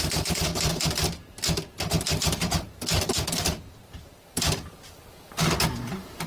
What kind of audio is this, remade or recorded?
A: remade